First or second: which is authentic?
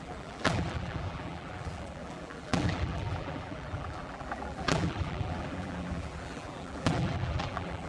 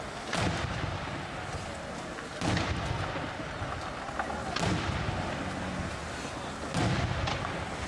second